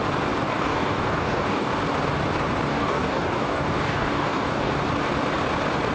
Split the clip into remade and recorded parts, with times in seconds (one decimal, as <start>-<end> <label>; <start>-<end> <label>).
0.0-0.4 recorded; 0.4-1.7 remade; 1.7-2.7 recorded; 2.7-4.7 remade; 4.7-5.9 recorded